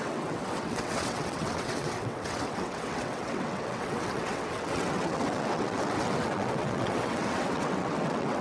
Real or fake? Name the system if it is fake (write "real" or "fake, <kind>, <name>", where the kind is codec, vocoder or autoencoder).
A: fake, vocoder, WaveNeXt